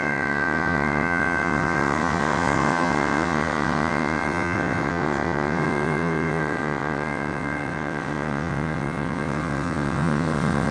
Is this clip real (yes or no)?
no